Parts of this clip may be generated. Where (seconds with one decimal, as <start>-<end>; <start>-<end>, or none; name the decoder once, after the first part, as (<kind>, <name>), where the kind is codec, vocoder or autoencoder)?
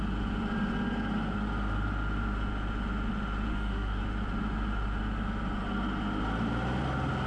3.5-4.0 (autoencoder, DAC-VAE)